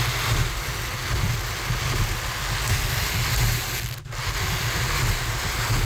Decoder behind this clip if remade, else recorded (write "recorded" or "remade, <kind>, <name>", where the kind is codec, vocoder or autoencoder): recorded